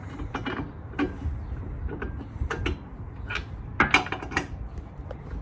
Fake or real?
real